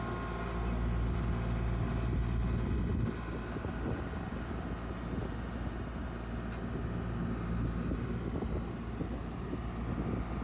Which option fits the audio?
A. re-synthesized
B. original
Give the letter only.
B